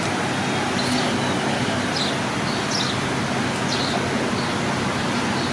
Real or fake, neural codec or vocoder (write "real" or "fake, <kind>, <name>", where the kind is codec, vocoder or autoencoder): real